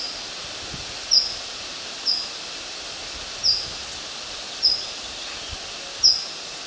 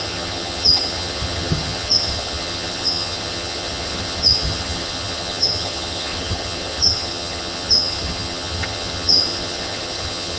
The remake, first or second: second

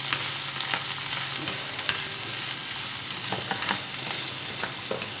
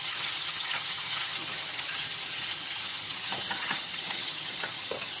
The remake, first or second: second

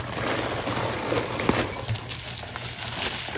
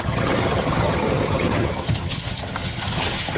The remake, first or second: second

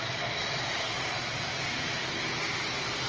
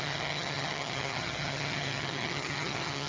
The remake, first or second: second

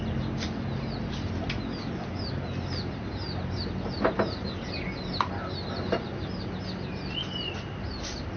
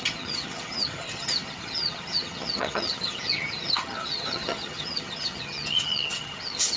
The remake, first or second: second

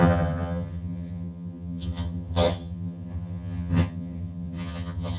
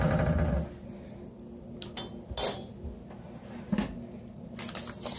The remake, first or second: first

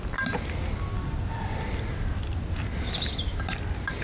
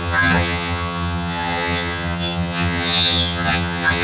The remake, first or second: second